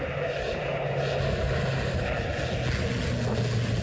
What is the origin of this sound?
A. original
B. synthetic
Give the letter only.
A